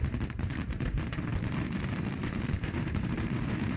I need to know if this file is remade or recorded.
remade